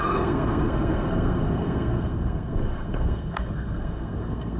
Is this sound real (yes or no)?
no